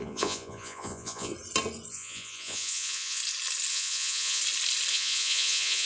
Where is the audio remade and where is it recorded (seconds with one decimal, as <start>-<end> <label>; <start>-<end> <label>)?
0.0-1.3 remade; 1.3-1.9 recorded; 1.9-3.2 remade; 3.2-3.7 recorded; 3.7-4.4 remade; 4.4-4.9 recorded; 4.9-5.9 remade